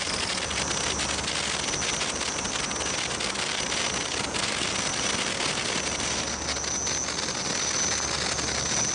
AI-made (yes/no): no